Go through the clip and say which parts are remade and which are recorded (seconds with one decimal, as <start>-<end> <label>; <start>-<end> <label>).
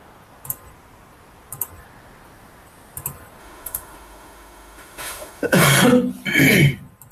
0.0-3.4 recorded; 3.4-5.6 remade; 5.6-7.1 recorded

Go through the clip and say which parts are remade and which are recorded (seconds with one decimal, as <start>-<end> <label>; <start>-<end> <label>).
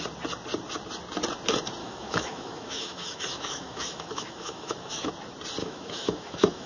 0.0-1.8 recorded; 1.8-5.1 remade; 5.1-5.6 recorded; 5.6-6.7 remade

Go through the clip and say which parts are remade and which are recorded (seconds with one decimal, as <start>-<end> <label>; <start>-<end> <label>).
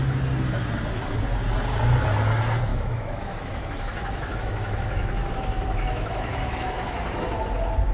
0.0-2.7 recorded; 2.7-7.4 remade; 7.4-7.9 recorded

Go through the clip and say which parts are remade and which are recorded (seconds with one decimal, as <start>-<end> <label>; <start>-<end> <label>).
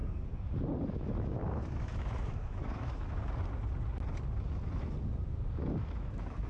0.0-0.9 recorded; 0.9-3.2 remade; 3.2-5.8 recorded; 5.8-6.5 remade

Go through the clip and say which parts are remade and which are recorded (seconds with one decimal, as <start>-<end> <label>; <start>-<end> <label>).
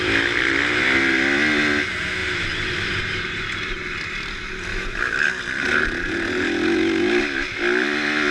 0.0-4.7 recorded; 4.7-5.3 remade; 5.3-8.3 recorded